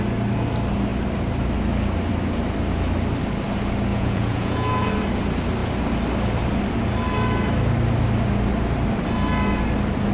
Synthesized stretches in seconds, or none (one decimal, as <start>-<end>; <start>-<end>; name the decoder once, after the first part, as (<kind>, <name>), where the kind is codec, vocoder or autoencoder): 3.9-4.9 (vocoder, Vocos)